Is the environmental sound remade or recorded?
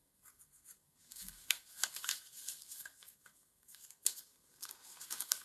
remade